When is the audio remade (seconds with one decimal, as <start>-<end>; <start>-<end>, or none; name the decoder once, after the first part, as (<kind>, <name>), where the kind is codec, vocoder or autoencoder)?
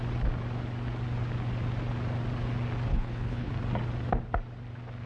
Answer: 2.9-3.5 (codec, HILCodec)